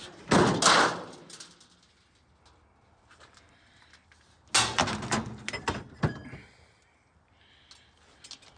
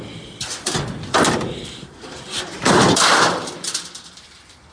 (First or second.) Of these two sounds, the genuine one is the first